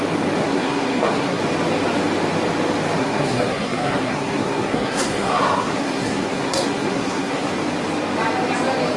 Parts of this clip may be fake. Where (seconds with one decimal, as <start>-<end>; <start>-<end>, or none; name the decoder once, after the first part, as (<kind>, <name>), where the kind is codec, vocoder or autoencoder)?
0.4-1.4 (codec, SNAC); 3.0-7.5